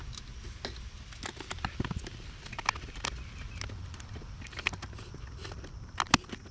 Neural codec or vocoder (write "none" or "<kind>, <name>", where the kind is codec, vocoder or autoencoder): none